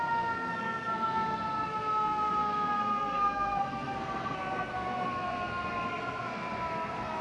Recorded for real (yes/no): no